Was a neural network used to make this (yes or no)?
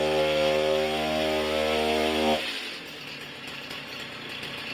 no